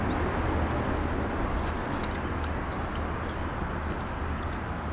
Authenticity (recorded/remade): recorded